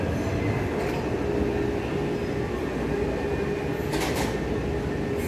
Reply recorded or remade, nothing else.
recorded